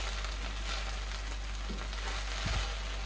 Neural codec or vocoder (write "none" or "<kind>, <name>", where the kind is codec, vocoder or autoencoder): none